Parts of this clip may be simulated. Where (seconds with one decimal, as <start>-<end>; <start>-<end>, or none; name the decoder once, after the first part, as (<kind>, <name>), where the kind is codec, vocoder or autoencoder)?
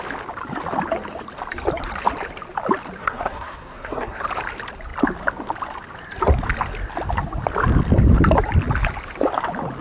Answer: 3.0-4.2 (codec, SNAC)